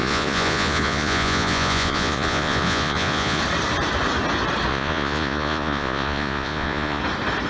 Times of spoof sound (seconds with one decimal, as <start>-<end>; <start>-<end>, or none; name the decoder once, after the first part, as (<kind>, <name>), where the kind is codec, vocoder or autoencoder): 0.0-3.4 (vocoder, Vocos); 4.7-7.0